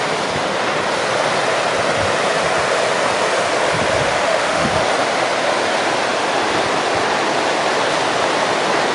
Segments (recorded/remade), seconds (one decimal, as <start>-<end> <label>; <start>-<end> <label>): 0.0-4.0 recorded; 4.0-4.8 remade; 4.8-8.9 recorded